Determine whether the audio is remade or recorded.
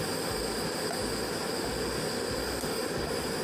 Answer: recorded